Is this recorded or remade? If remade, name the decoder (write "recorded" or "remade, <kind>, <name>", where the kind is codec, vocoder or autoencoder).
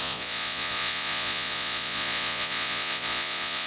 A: remade, vocoder, Vocos